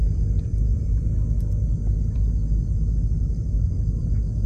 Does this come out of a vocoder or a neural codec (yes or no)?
no